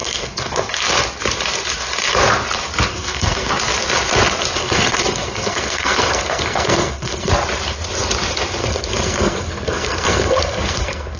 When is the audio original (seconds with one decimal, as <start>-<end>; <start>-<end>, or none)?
0.7-2.9; 3.5-4.6; 7.3-8.6